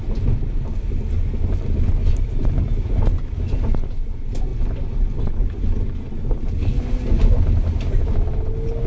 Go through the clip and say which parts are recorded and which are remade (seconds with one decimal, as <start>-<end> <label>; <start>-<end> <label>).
0.0-8.9 recorded